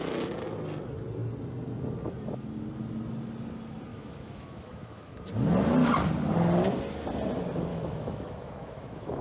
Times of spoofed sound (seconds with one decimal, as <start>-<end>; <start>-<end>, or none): 3.9-5.1; 7.7-9.2